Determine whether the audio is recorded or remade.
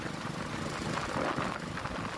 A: recorded